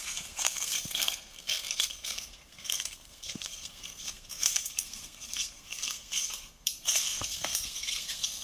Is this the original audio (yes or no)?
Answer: no